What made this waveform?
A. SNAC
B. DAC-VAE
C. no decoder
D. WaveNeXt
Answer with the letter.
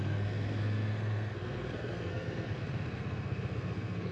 A